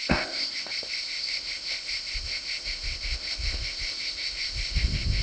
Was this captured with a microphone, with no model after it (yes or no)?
no